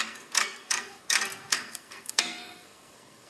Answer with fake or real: fake